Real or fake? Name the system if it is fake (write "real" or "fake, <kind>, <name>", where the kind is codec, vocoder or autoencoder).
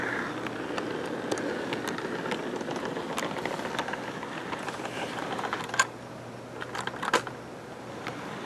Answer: real